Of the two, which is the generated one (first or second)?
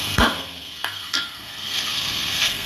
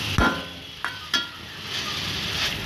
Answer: first